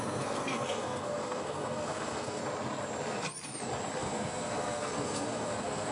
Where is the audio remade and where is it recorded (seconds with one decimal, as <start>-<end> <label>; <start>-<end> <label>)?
0.0-2.4 remade; 2.4-4.0 recorded; 4.0-5.9 remade